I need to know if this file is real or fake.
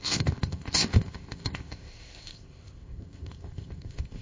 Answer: fake